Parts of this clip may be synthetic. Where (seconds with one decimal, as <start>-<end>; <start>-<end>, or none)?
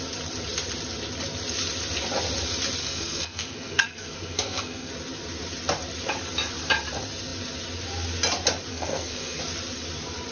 2.8-4.9; 8.7-9.4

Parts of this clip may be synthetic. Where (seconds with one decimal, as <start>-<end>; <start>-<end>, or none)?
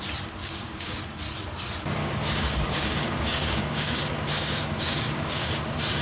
0.4-1.0; 2.0-5.6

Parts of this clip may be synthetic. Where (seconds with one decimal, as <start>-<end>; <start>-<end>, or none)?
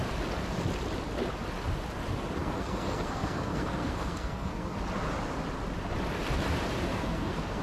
2.4-4.8; 6.9-7.6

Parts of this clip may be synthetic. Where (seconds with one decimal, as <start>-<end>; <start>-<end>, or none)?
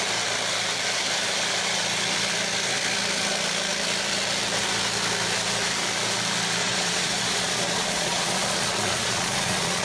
6.6-9.8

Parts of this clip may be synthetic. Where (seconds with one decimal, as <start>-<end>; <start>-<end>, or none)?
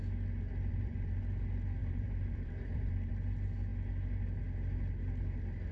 0.7-1.2; 1.8-3.1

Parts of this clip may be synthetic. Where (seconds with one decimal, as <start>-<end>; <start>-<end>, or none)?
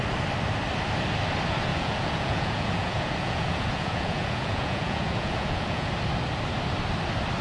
1.7-5.9